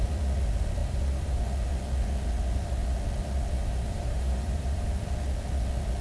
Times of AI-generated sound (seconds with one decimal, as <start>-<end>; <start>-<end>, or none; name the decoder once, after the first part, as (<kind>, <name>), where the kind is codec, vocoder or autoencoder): 0.8-1.4 (vocoder, BigVGAN v2); 3.6-4.9